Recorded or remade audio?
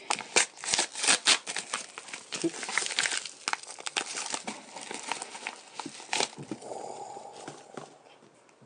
recorded